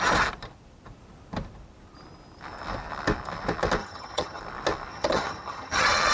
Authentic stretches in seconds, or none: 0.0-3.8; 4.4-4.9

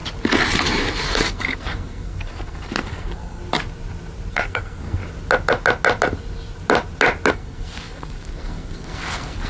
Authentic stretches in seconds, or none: 0.0-1.0; 3.4-4.3; 5.0-7.3

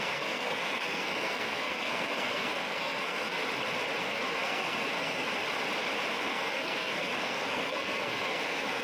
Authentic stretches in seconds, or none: 3.4-4.0; 5.3-6.1